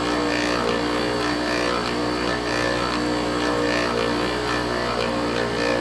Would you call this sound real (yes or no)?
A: no